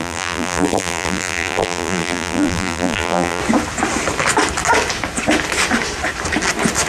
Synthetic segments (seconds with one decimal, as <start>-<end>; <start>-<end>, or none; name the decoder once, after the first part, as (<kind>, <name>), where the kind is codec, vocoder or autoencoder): 0.0-3.4 (vocoder, BigVGAN v2)